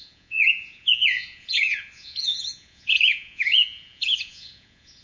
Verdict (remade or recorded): remade